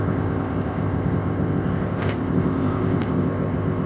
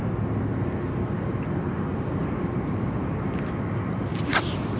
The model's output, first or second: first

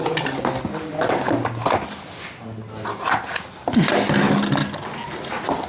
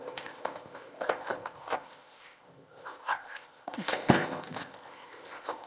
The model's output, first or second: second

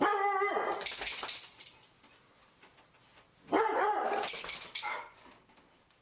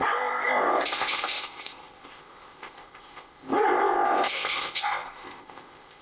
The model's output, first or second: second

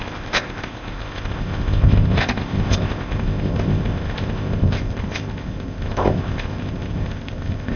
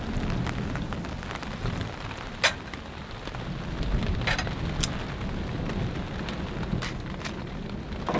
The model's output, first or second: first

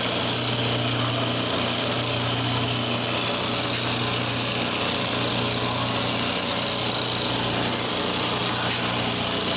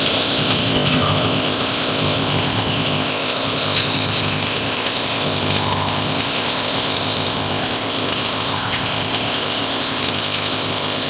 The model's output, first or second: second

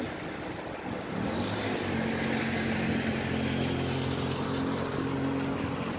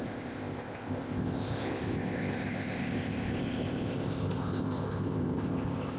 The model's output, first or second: second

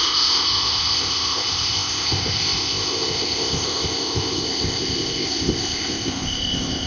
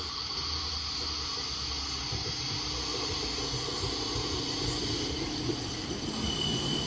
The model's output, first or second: first